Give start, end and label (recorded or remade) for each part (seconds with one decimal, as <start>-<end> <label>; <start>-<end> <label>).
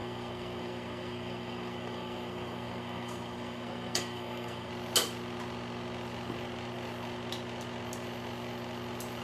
0.0-4.7 remade; 4.7-9.2 recorded